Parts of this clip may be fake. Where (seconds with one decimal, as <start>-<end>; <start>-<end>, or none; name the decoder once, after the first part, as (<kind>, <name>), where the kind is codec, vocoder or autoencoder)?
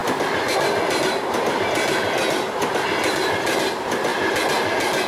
none